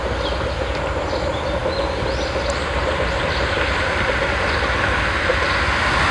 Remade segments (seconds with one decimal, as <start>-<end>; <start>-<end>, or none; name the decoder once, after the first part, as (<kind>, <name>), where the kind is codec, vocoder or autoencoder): none